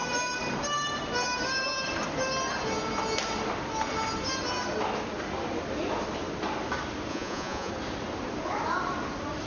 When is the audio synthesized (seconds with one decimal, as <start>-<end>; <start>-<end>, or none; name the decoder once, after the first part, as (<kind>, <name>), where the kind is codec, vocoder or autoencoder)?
7.1-7.7 (vocoder, Vocos)